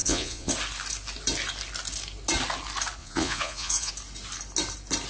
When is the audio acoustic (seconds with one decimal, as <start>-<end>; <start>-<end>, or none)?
0.5-3.0; 3.9-5.1